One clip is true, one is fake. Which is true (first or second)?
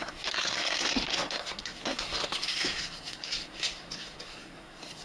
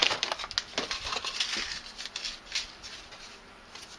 second